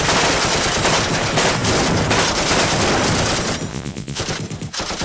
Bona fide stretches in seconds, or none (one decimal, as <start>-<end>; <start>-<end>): 0.0-3.7; 4.2-5.0